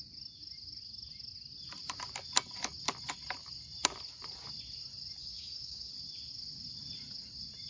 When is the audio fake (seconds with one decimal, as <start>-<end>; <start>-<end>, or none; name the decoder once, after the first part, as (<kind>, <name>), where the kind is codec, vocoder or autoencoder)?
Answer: 5.2-5.9 (codec, DAC)